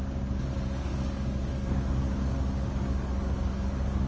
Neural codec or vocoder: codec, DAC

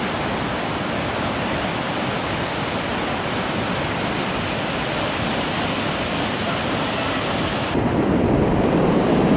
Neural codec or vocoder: none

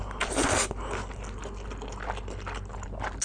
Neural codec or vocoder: none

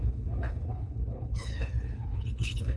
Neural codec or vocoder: codec, HILCodec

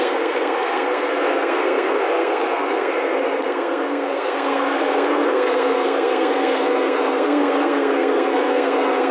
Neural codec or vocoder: codec, SNAC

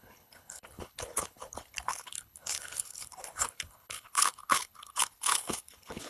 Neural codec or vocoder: codec, HILCodec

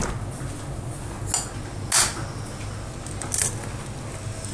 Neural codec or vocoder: none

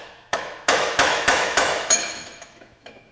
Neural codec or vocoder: autoencoder, DAC-VAE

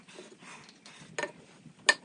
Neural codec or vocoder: none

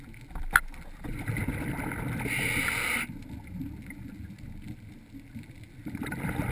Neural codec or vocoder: none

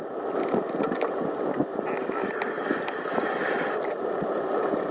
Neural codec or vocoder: none